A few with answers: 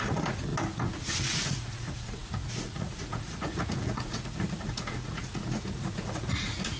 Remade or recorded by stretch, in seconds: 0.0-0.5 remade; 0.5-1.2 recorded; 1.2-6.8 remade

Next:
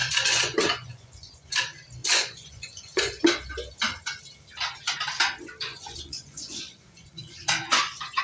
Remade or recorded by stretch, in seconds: 0.0-1.6 remade; 1.6-2.0 recorded; 2.0-3.2 remade; 3.2-5.7 recorded; 5.7-8.2 remade

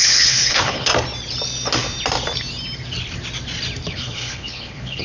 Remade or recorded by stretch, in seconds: 0.0-0.9 remade; 0.9-3.9 recorded; 3.9-5.0 remade

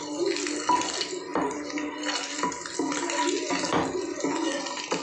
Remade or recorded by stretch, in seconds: 0.0-5.0 recorded